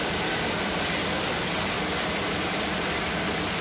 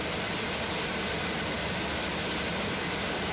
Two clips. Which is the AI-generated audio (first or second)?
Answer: second